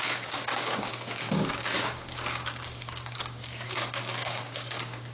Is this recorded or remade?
remade